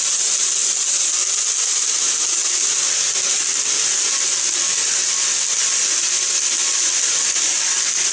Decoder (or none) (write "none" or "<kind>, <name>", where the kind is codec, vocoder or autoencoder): none